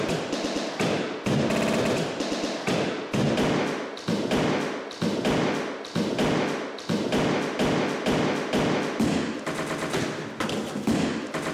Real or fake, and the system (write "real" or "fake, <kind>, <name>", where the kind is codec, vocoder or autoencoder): real